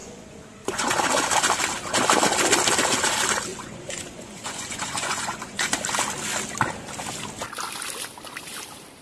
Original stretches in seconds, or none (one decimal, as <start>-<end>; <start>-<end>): 0.9-3.5; 5.8-9.0